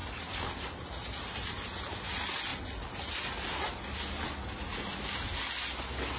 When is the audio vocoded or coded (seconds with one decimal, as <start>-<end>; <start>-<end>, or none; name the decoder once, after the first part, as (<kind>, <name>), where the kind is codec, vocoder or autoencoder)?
none